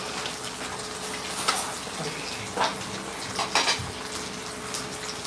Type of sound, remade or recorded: recorded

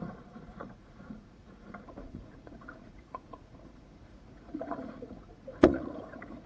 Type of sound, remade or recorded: remade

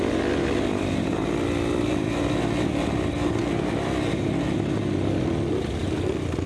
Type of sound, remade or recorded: recorded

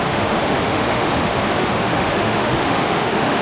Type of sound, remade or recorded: remade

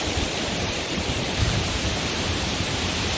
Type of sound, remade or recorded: remade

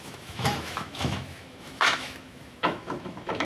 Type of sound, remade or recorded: remade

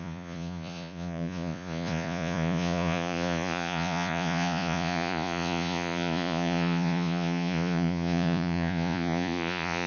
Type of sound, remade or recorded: remade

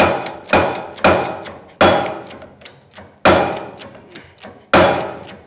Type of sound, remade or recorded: recorded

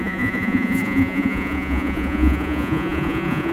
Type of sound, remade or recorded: remade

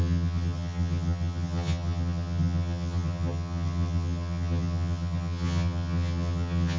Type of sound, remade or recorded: remade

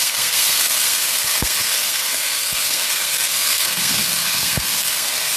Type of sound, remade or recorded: remade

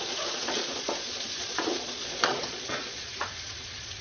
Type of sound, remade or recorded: remade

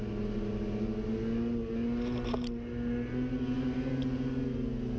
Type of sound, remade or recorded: recorded